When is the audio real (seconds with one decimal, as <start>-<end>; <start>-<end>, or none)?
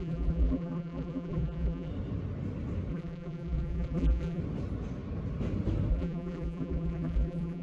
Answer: 1.9-2.9; 4.4-5.9